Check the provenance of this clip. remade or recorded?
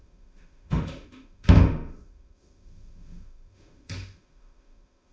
remade